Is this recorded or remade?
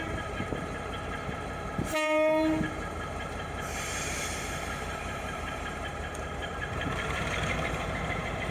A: remade